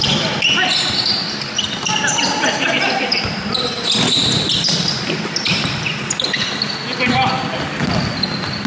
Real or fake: real